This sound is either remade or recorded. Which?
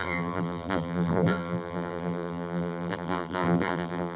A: remade